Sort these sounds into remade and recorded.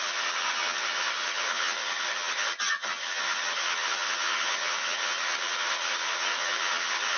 remade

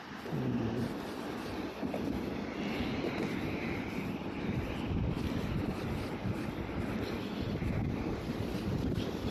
recorded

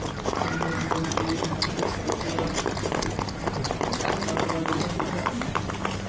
recorded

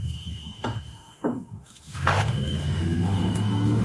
remade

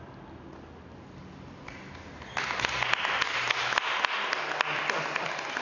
recorded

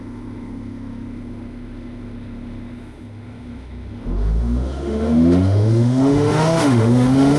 remade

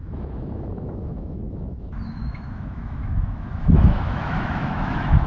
remade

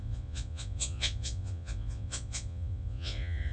remade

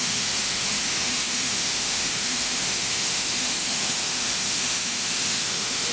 remade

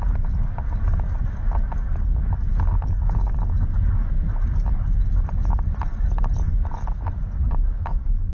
recorded